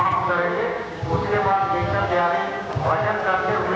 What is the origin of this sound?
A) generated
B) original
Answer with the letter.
A